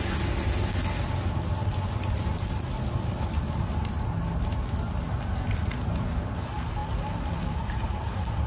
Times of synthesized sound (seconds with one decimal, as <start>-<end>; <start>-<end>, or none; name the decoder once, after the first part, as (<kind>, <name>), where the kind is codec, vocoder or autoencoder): none

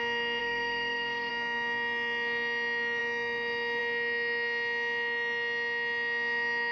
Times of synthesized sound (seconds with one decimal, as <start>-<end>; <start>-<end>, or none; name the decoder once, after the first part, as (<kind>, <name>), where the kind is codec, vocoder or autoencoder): 0.4-1.3 (autoencoder, DAC-VAE)

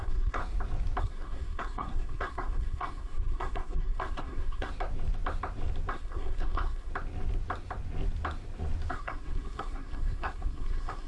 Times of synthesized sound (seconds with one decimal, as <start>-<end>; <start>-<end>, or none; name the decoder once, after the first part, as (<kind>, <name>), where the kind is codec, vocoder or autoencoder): 0.0-0.4 (codec, SNAC); 1.0-4.7; 5.9-6.9; 8.9-11.1

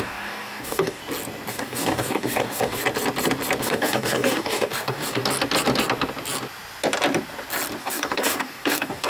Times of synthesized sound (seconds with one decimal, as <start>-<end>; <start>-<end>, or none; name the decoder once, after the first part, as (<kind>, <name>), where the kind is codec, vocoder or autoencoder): 0.0-1.0 (codec, DAC); 1.5-2.8; 3.6-5.2; 7.8-9.1

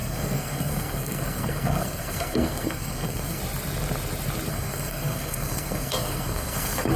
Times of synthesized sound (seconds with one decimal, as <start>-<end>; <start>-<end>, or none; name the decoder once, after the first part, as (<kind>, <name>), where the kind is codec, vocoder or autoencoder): 0.0-3.4 (codec, SNAC); 4.5-7.0